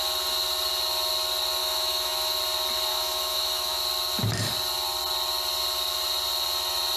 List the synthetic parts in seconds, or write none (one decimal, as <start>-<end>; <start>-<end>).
1.6-2.4; 2.9-3.8